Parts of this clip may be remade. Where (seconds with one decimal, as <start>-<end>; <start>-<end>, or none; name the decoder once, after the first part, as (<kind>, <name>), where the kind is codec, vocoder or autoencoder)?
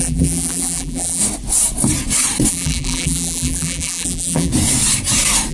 0.0-1.2 (vocoder, BigVGAN v2); 2.5-4.5